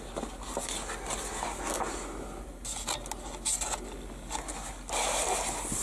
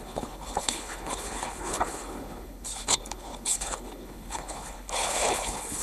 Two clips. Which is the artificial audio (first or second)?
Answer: second